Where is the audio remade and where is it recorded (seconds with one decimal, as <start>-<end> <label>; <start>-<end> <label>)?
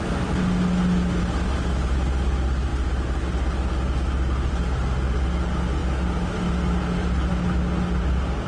0.0-8.5 recorded